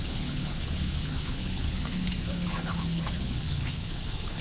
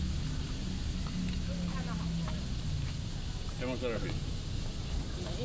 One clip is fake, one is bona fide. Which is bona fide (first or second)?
second